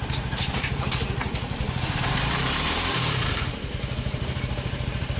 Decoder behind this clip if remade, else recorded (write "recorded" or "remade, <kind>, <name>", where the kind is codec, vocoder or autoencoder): remade, vocoder, BigVGAN v2